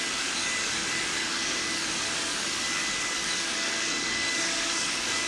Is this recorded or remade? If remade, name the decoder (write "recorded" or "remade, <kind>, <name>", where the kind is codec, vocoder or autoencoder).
remade, codec, DAC